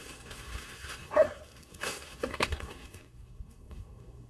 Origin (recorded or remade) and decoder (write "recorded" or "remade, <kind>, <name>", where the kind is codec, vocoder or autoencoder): remade, codec, SNAC